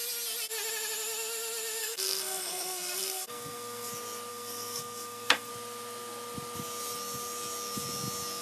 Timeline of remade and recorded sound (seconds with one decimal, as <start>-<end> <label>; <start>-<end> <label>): 0.0-1.8 recorded; 1.8-3.9 remade; 3.9-4.3 recorded; 4.3-5.5 remade; 5.5-8.4 recorded